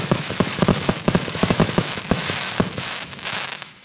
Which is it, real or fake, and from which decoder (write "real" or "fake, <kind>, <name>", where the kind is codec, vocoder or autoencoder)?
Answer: fake, autoencoder, DAC-VAE